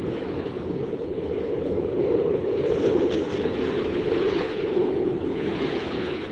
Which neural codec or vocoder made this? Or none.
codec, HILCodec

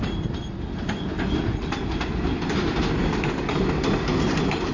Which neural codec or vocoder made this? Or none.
none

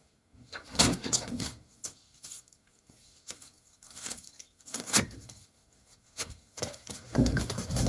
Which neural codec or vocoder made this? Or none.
codec, SNAC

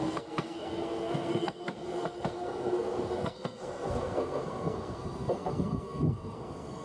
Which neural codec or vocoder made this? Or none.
codec, SNAC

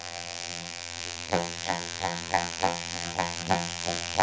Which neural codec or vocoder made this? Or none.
vocoder, BigVGAN v2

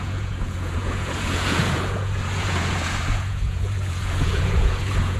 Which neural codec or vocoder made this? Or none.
vocoder, Vocos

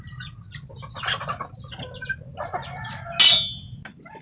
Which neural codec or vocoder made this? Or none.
none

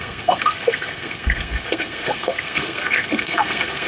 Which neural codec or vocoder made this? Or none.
codec, SNAC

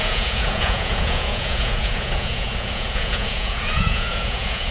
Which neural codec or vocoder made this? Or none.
vocoder, Vocos